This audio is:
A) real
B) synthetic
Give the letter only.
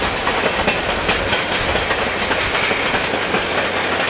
A